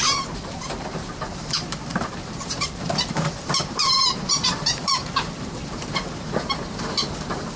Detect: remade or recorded remade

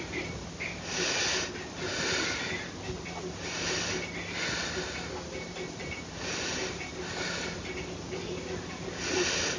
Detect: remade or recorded recorded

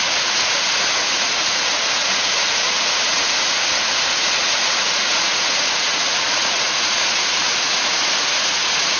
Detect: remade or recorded remade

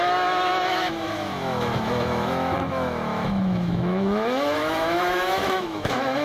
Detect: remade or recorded remade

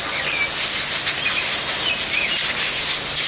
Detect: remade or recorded recorded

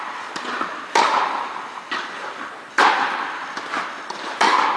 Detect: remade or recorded remade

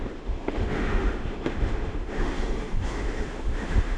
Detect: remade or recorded remade